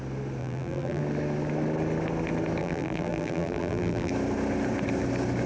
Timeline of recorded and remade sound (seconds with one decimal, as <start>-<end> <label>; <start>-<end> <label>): 0.0-0.4 recorded; 0.4-1.0 remade; 1.0-2.6 recorded; 2.6-4.1 remade; 4.1-5.5 recorded